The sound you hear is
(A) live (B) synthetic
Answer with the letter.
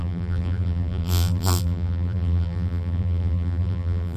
B